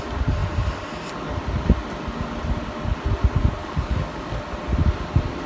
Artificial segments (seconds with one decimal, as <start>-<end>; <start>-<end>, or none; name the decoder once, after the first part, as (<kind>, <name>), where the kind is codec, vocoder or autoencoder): 3.6-4.4 (codec, DAC)